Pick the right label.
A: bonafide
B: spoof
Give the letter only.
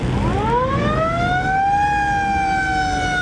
A